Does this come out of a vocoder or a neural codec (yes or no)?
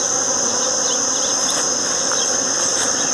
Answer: no